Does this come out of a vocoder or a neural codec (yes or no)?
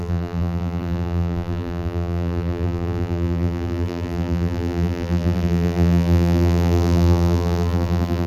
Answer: yes